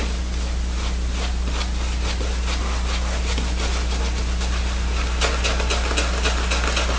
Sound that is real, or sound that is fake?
real